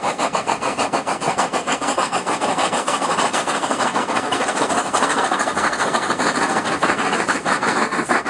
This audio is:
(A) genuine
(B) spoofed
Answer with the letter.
B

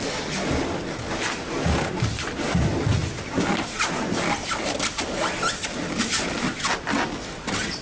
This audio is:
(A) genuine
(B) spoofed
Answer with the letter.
A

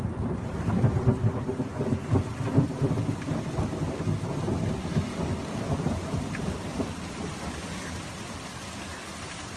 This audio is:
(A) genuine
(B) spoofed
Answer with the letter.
A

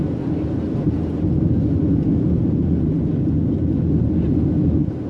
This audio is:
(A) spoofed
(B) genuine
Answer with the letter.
B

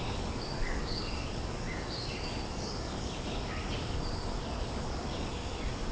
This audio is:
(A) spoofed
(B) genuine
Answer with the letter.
A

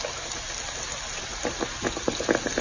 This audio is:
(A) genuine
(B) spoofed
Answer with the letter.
A